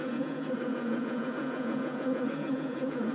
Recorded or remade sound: remade